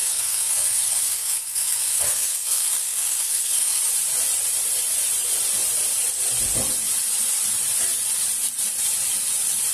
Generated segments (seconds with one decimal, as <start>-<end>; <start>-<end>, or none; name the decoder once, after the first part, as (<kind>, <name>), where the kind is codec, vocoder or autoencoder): 0.0-3.8 (codec, SNAC)